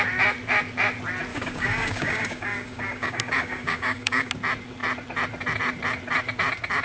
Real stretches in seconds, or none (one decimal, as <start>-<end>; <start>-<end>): 0.0-1.3; 4.3-6.8